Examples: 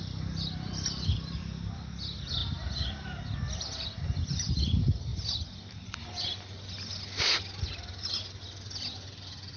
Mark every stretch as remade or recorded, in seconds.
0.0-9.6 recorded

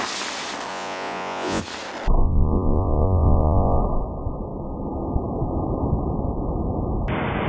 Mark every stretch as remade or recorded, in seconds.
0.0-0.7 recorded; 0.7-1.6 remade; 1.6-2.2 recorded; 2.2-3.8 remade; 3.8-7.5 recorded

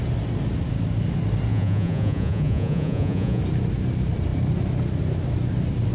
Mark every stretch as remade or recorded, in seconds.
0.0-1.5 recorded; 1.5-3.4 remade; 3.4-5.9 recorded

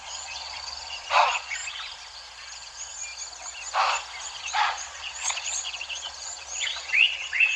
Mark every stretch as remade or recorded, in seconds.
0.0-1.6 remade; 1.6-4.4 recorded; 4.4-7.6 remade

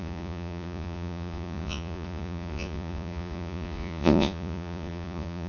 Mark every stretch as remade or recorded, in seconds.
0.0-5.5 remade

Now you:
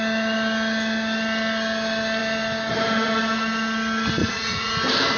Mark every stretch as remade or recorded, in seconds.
0.0-4.2 recorded; 4.2-4.7 remade; 4.7-5.2 recorded

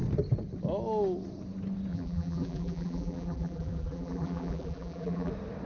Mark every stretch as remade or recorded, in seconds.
0.0-1.9 recorded; 1.9-5.3 remade; 5.3-5.7 recorded